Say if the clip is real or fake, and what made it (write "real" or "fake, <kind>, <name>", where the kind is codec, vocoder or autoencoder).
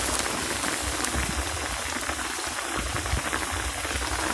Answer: real